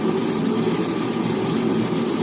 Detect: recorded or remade recorded